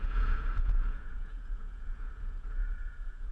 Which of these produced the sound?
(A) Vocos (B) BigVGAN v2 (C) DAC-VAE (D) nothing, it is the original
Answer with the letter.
A